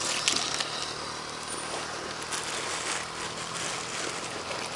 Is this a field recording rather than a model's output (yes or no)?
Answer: yes